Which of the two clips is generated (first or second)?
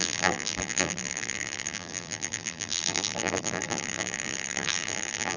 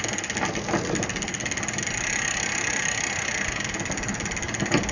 first